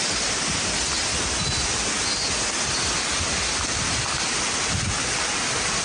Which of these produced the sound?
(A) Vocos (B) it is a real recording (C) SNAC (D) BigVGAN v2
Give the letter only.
B